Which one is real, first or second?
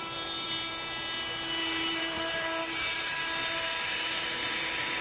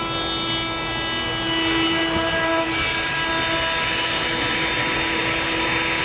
second